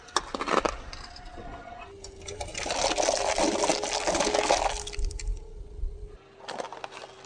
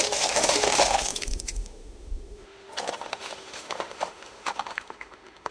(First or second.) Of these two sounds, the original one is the first